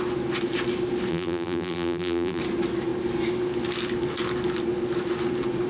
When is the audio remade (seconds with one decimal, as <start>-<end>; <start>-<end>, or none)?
1.1-2.4